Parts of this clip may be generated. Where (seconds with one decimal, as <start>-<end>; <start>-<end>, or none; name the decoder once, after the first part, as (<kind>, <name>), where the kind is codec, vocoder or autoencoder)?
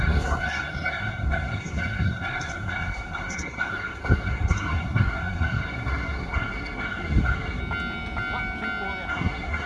0.0-7.6 (codec, SNAC); 9.1-9.7